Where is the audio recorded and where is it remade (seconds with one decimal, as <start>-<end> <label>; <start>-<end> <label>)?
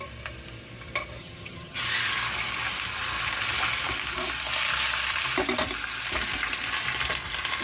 0.0-1.2 recorded; 1.2-1.8 remade; 1.8-7.6 recorded